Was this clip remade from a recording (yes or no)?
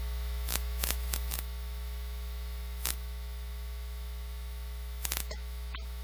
yes